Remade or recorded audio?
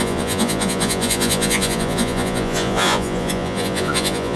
remade